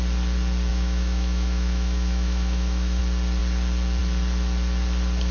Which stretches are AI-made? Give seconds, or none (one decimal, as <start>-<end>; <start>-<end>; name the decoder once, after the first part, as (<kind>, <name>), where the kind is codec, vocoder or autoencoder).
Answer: 0.7-3.0 (autoencoder, DAC-VAE)